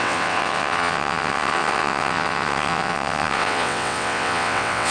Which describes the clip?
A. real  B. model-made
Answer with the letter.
B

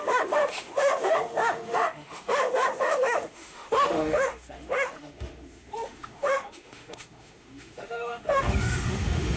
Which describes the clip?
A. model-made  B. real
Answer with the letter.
A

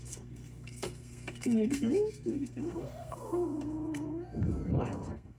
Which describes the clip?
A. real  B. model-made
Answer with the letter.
B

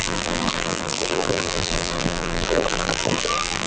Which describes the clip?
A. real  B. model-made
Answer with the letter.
B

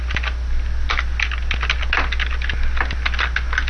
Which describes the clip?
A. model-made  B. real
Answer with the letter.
B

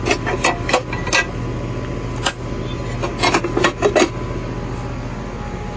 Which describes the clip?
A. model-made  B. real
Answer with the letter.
B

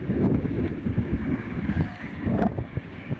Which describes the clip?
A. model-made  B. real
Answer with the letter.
A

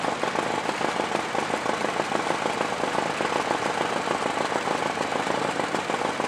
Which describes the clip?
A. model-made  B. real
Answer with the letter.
B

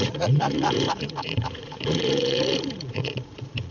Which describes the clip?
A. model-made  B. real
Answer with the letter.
A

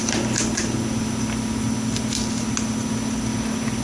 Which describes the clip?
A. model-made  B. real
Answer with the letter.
B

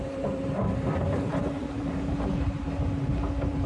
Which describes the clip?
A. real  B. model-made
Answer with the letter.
B